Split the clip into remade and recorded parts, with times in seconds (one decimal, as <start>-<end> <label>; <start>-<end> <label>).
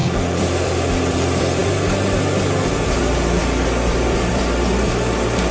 0.0-5.5 recorded